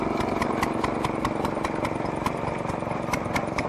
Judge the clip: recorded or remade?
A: recorded